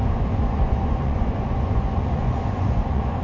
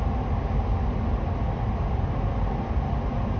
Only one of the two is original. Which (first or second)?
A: second